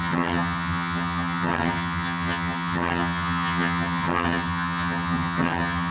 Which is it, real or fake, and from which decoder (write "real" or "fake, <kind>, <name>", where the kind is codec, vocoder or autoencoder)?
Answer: fake, vocoder, HiFi-GAN